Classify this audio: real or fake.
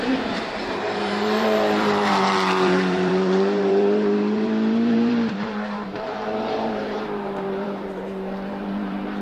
fake